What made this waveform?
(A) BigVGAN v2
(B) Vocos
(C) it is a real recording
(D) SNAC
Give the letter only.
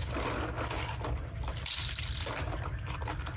C